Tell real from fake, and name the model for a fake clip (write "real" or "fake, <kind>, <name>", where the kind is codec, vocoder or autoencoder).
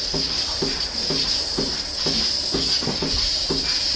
real